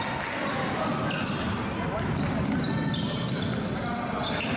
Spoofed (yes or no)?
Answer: no